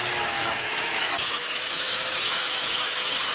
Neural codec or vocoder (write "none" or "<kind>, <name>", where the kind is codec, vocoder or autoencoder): autoencoder, DAC-VAE